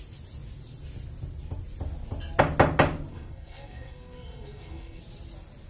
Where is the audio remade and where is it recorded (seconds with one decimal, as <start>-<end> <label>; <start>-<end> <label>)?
0.0-3.1 recorded; 3.1-5.0 remade; 5.0-5.7 recorded